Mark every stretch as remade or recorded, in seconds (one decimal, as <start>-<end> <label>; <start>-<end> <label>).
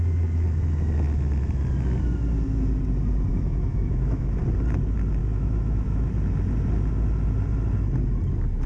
0.0-3.3 recorded; 3.3-4.4 remade; 4.4-5.2 recorded; 5.2-6.1 remade; 6.1-8.7 recorded